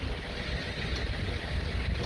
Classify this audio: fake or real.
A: real